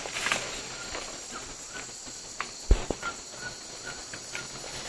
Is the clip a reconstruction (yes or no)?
no